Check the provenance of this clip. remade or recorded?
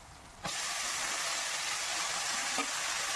recorded